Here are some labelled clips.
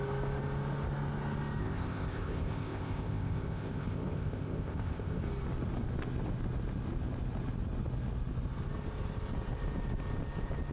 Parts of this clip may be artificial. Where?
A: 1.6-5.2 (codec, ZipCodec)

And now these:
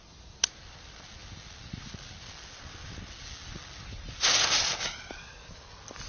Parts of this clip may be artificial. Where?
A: none

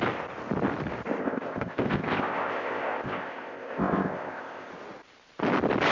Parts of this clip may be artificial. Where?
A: 1.2-4.7 (codec, ZipCodec)